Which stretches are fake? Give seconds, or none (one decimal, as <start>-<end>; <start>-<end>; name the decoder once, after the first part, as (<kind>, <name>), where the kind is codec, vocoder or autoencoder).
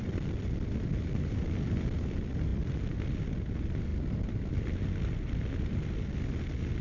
none